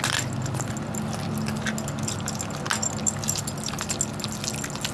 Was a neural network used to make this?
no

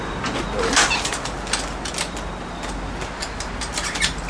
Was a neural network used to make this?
no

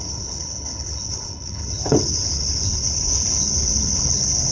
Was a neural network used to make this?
yes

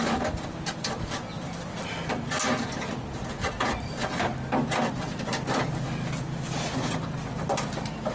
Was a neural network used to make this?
no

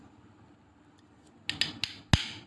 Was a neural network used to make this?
no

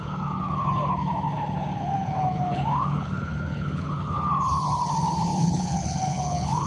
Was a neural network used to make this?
yes